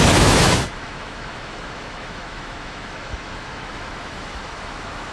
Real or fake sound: fake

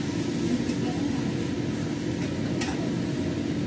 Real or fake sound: real